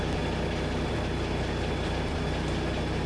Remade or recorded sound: recorded